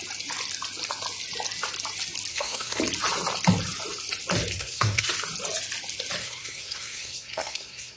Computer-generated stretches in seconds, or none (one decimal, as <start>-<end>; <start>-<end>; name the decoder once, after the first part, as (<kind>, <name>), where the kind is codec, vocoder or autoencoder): 2.3-2.8 (codec, SNAC); 4.5-5.1; 6.2-8.0